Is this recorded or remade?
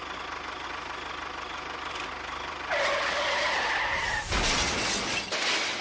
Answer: recorded